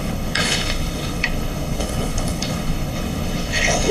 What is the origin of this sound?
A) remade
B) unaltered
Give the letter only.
A